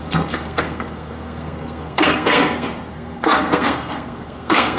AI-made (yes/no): yes